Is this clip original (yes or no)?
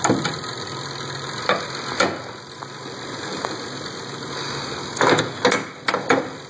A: yes